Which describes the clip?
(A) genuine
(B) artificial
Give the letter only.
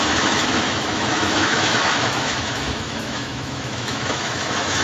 B